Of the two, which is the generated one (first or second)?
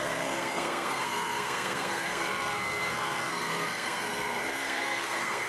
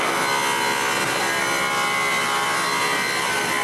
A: first